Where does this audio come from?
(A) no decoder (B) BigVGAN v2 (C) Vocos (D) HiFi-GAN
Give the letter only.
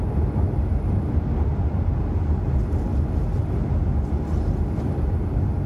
A